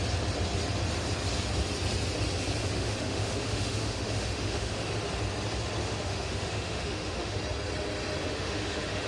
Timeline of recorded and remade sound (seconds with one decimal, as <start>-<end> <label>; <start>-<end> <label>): 0.0-2.6 recorded; 2.6-4.9 remade; 4.9-5.8 recorded; 5.8-7.4 remade; 7.4-8.2 recorded; 8.2-9.1 remade